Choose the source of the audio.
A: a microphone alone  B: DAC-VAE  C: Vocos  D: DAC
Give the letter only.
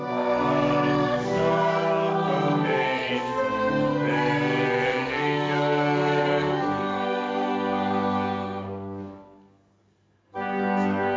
D